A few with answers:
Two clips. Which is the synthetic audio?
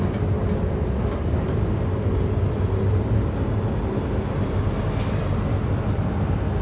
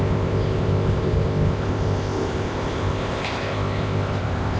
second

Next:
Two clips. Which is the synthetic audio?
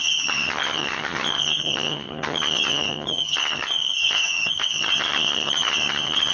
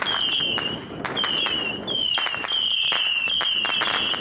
first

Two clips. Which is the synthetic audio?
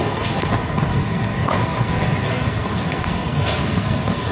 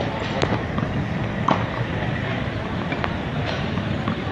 first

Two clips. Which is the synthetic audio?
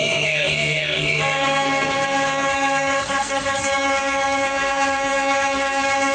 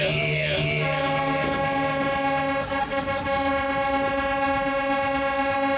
first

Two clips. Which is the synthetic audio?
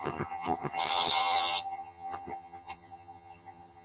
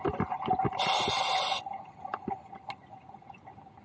first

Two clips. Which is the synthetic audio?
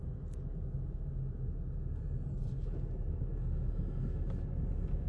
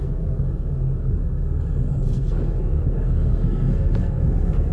second